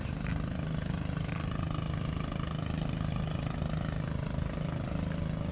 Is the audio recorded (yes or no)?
yes